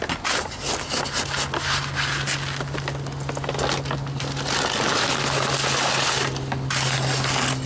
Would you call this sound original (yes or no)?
yes